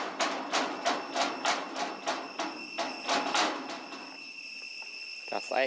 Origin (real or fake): real